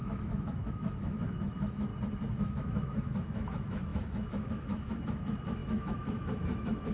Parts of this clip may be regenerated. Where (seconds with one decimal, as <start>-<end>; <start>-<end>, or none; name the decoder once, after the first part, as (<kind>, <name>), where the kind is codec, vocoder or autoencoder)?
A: 0.0-1.9 (autoencoder, DAC-VAE); 2.4-6.9

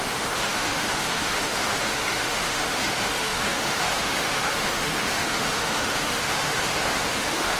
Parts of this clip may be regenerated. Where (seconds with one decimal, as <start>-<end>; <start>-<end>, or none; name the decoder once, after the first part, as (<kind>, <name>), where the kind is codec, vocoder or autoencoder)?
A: 0.0-7.6 (autoencoder, DAC-VAE)

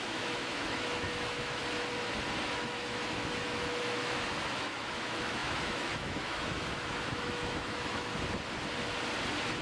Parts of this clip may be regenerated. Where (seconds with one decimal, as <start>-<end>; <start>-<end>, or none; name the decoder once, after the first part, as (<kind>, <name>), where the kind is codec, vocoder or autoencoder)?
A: 0.0-1.6 (autoencoder, DAC-VAE); 2.5-8.1

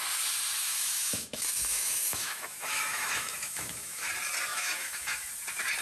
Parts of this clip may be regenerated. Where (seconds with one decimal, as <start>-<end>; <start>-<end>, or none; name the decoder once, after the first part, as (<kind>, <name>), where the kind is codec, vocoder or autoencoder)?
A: 0.6-4.1 (autoencoder, DAC-VAE); 4.5-5.3

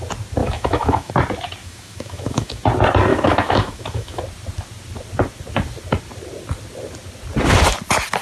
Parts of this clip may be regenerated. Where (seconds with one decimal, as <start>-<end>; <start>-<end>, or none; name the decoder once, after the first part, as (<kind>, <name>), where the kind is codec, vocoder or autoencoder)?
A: 0.4-1.1 (autoencoder, DAC-VAE); 1.6-2.6; 3.1-4.2

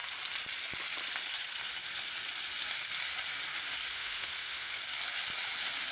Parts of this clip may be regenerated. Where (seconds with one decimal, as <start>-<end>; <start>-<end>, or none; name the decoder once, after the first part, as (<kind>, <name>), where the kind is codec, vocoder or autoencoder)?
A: 3.9-4.8 (autoencoder, DAC-VAE)